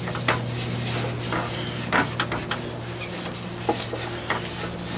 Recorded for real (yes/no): yes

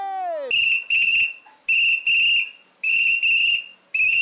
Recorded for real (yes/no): yes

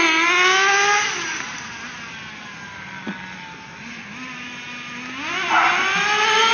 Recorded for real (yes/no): yes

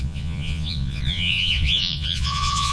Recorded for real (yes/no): no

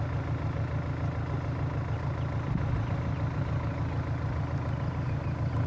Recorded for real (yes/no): yes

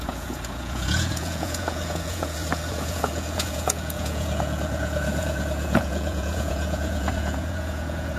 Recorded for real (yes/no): no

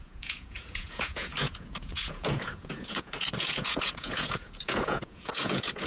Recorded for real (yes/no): no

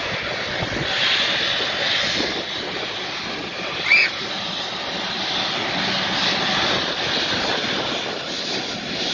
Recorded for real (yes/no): yes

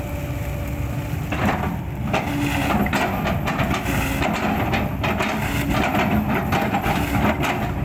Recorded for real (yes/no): yes